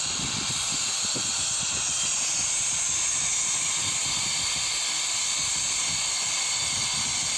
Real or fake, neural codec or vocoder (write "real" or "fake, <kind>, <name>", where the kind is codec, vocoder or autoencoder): real